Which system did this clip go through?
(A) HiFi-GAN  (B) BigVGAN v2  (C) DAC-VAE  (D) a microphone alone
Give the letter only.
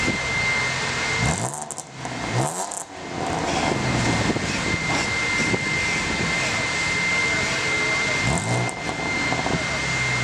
D